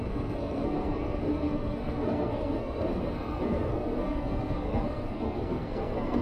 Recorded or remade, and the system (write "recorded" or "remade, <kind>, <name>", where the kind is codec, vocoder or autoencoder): remade, codec, SNAC